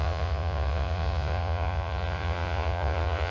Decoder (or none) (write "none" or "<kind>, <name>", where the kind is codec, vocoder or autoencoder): vocoder, Vocos